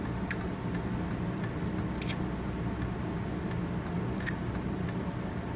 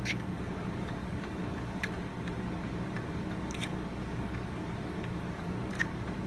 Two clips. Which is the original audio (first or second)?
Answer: first